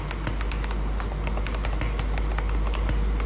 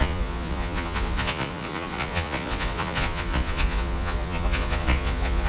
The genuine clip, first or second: first